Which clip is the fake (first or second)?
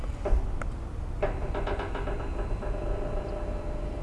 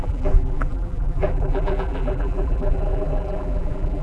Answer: second